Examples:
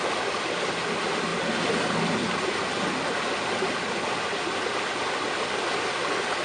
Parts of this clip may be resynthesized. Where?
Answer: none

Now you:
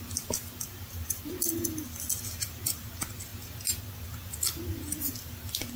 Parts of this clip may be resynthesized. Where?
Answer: none

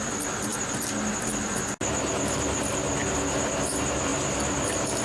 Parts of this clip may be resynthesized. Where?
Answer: none

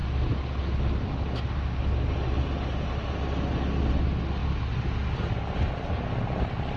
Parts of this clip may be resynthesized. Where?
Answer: none

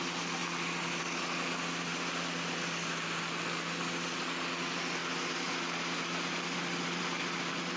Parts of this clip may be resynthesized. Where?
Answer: none